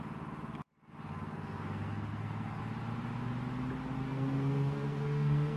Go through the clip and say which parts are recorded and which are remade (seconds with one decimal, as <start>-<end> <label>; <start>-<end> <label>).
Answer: 0.0-1.1 recorded; 1.1-2.6 remade; 2.6-4.0 recorded; 4.0-5.6 remade